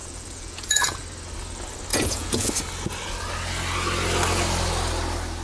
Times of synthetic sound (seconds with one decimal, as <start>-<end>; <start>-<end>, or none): 0.0-1.0; 1.9-2.5